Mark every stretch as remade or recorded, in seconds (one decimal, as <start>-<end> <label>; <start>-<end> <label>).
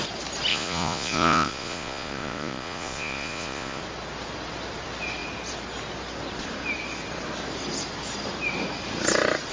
0.0-0.5 recorded; 0.5-3.8 remade; 3.8-9.5 recorded